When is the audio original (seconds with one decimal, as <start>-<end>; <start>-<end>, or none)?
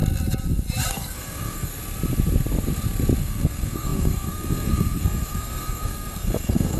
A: 0.0-0.9; 1.7-3.2